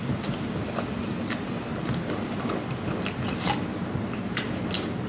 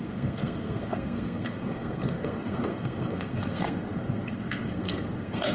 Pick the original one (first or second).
first